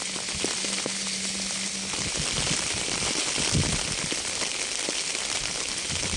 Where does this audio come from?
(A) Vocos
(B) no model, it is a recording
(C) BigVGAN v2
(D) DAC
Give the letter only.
B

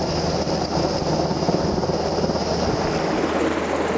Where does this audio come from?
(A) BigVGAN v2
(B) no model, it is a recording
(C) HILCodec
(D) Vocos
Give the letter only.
B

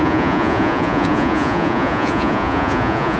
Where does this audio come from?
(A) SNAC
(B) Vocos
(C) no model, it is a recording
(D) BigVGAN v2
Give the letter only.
B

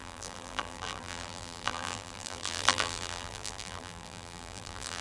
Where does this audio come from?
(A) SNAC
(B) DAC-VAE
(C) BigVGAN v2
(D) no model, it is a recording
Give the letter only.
C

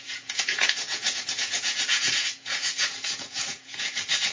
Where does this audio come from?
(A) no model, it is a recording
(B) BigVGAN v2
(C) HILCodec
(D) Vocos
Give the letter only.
D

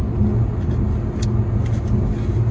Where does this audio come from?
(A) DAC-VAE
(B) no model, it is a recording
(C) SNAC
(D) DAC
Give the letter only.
B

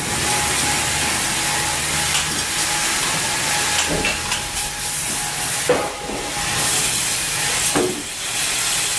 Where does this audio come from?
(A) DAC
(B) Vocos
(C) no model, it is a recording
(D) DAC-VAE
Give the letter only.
C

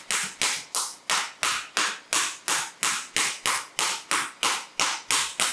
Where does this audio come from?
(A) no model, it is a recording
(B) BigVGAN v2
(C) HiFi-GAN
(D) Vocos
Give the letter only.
A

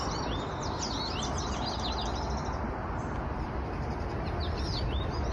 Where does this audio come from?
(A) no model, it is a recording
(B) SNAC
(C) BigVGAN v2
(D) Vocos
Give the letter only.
A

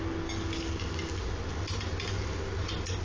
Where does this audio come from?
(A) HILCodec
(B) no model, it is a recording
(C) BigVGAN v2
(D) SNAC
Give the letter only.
B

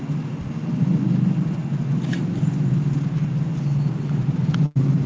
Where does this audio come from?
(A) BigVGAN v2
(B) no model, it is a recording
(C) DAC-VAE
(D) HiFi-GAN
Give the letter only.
B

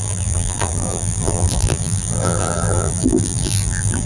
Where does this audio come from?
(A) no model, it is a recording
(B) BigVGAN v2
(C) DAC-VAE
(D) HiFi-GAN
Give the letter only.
B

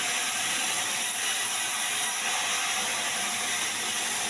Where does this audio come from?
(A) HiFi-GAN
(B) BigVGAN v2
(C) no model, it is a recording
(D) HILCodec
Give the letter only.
C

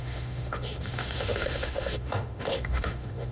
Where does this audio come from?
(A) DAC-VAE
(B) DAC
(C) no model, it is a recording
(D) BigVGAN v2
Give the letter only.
A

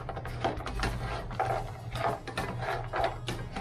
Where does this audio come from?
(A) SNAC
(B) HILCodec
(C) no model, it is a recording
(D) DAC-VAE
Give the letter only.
C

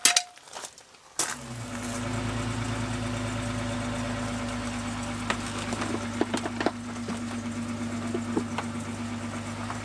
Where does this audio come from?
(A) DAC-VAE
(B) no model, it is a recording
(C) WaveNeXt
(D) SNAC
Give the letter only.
B